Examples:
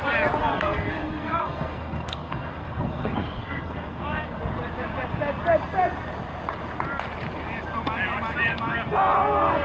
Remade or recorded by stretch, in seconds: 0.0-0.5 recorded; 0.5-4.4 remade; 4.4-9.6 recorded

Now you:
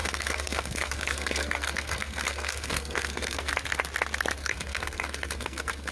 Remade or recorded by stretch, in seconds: 0.0-3.5 remade; 3.5-4.4 recorded; 4.4-5.9 remade

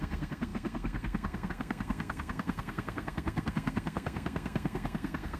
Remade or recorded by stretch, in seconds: 0.0-5.4 remade

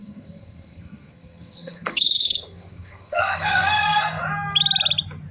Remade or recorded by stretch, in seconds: 0.0-4.2 remade; 4.2-5.3 recorded